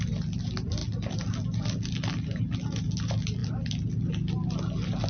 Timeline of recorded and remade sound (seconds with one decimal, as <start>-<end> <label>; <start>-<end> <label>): 0.0-5.1 recorded

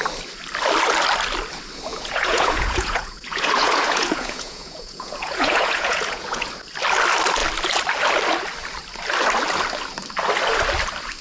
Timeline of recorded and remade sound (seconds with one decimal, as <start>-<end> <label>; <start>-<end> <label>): 0.0-1.9 recorded; 1.9-6.5 remade; 6.5-11.2 recorded